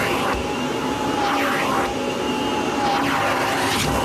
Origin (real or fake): real